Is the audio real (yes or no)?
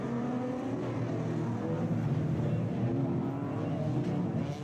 yes